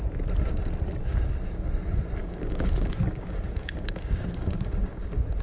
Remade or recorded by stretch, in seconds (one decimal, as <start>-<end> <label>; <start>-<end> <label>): 0.0-2.2 recorded; 2.2-5.4 remade